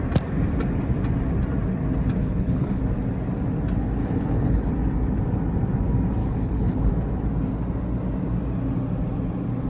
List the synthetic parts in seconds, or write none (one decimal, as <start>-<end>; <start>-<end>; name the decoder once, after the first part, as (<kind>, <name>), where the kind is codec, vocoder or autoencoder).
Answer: 2.2-2.8 (codec, HILCodec); 4.0-4.7; 6.2-6.9